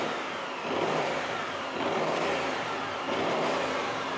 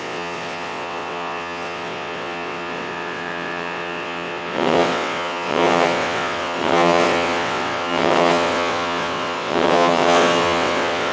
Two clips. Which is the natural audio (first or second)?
first